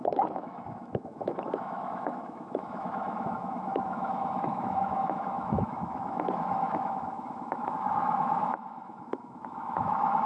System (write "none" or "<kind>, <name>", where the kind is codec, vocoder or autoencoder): autoencoder, DAC-VAE